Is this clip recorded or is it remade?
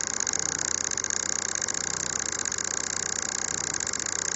recorded